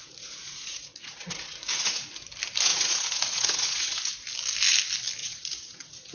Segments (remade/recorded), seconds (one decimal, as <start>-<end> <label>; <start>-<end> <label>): 0.0-2.1 remade; 2.1-2.7 recorded; 2.7-4.1 remade; 4.1-5.2 recorded; 5.2-6.1 remade

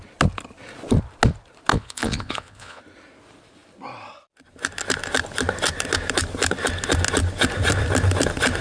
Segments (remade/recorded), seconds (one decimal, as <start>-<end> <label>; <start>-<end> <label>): 0.0-1.7 recorded; 1.7-2.8 remade; 2.8-8.6 recorded

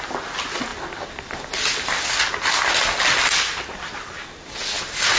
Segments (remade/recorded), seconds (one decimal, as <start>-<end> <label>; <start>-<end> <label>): 0.0-5.2 recorded